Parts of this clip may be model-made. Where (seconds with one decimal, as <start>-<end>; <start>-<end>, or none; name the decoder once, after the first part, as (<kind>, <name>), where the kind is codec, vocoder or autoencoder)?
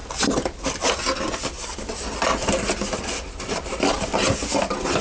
none